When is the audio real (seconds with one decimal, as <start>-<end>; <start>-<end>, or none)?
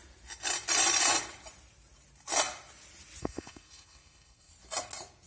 0.0-3.2; 4.5-5.3